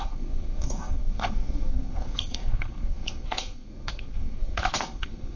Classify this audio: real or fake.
fake